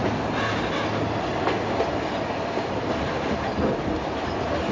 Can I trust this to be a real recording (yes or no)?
yes